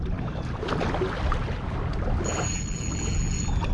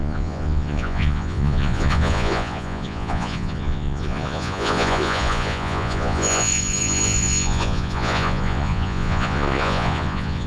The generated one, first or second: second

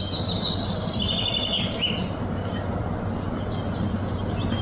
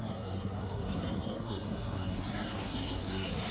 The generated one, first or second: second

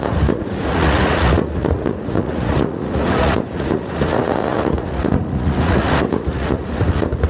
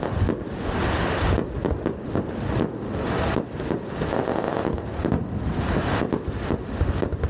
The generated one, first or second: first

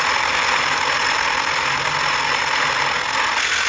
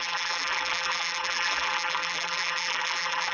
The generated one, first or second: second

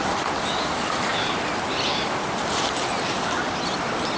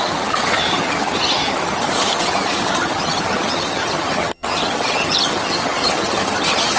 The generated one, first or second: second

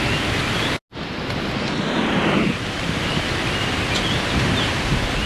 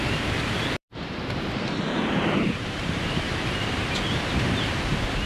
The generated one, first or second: second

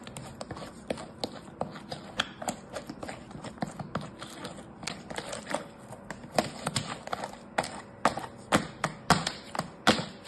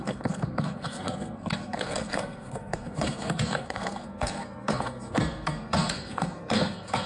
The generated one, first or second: second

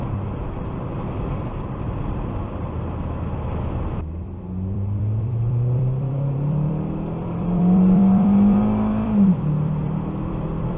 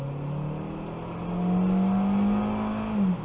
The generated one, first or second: first